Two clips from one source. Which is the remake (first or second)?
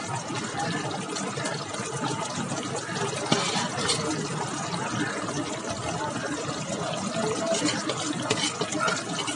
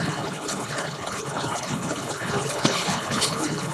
second